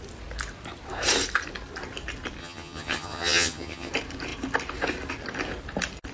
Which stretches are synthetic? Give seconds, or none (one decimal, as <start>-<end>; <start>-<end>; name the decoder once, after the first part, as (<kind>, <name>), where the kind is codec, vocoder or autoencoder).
2.4-3.9 (vocoder, HiFi-GAN)